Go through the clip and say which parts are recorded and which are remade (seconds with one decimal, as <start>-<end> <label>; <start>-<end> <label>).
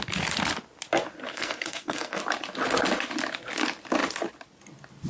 0.0-1.3 recorded; 1.3-2.2 remade; 2.2-5.1 recorded